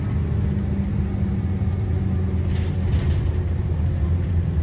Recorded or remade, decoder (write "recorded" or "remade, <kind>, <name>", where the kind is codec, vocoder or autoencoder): recorded